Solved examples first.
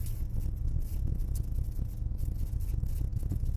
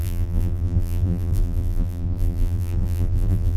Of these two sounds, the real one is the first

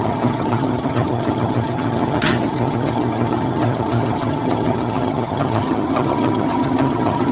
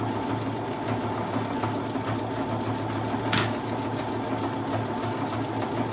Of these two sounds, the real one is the second